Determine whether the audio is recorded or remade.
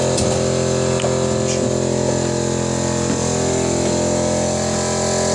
recorded